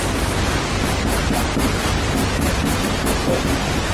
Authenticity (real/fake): real